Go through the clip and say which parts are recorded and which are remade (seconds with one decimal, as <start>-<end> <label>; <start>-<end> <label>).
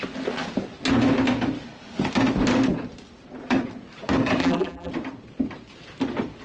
0.0-4.4 recorded; 4.4-4.9 remade; 4.9-6.4 recorded